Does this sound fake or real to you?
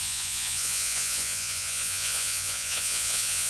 fake